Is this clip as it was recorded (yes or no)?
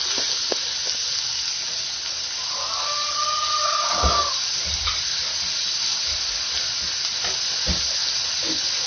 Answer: yes